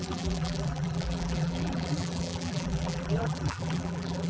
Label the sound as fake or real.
fake